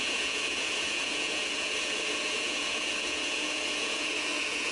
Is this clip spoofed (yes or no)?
yes